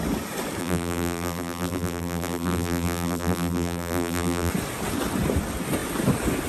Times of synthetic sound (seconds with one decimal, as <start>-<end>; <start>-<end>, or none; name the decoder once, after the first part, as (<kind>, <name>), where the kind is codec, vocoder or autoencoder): 0.6-4.5 (vocoder, BigVGAN v2)